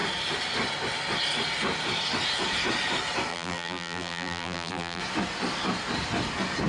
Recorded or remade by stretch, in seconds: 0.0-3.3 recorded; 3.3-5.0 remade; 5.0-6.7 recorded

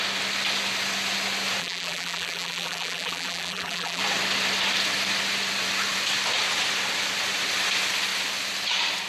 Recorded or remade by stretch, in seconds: 0.0-1.6 recorded; 1.6-4.0 remade; 4.0-9.1 recorded

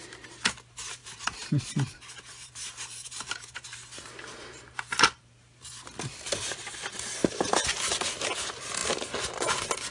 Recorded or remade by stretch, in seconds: 0.0-1.0 recorded; 1.0-5.7 remade; 5.7-7.2 recorded; 7.2-7.7 remade; 7.7-9.9 recorded

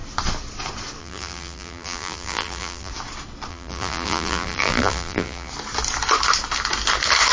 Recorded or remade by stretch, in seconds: 0.0-1.0 recorded; 1.0-2.9 remade; 2.9-3.5 recorded; 3.5-5.5 remade; 5.5-7.3 recorded

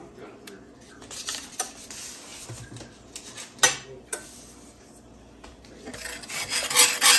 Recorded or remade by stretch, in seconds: 0.0-7.2 recorded